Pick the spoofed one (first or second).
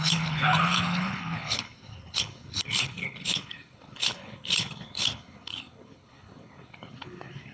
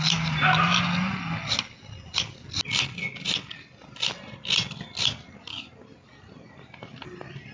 first